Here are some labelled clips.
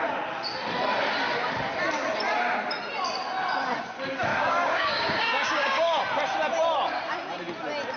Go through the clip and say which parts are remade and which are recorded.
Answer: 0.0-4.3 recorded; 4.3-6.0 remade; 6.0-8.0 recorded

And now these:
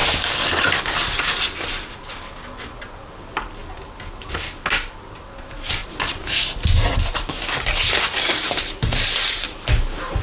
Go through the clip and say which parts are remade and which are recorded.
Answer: 0.0-10.2 recorded

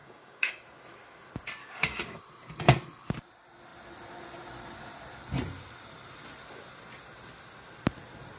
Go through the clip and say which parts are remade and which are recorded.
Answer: 0.0-0.5 remade; 0.5-1.6 recorded; 1.6-2.2 remade; 2.2-8.4 recorded

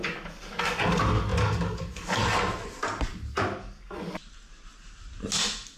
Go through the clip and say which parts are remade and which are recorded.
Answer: 0.0-2.2 remade; 2.2-3.6 recorded; 3.6-4.2 remade; 4.2-5.8 recorded

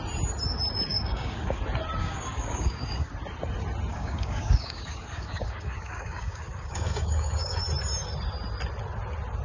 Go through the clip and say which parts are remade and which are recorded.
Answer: 0.0-0.9 recorded; 0.9-1.6 remade; 1.6-2.0 recorded; 2.0-3.1 remade; 3.1-3.9 recorded; 3.9-7.6 remade; 7.6-9.4 recorded

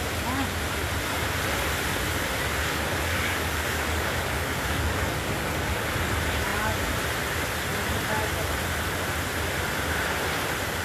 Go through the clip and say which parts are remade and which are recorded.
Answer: 0.0-2.6 recorded; 2.6-5.9 remade; 5.9-10.8 recorded

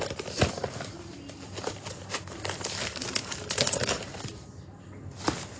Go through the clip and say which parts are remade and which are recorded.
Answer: 0.0-5.6 recorded

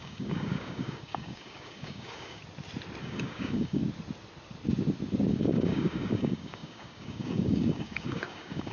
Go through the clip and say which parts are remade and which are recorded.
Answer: 0.0-2.4 remade; 2.4-3.0 recorded; 3.0-3.8 remade; 3.8-5.3 recorded; 5.3-8.7 remade